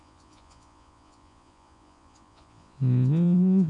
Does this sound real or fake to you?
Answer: fake